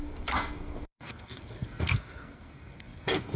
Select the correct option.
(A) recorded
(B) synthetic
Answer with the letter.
B